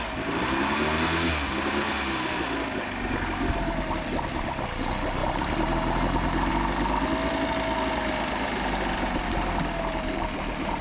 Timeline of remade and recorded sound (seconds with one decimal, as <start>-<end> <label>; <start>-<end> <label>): 0.0-10.8 recorded